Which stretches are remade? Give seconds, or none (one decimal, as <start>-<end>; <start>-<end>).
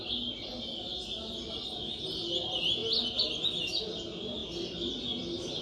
none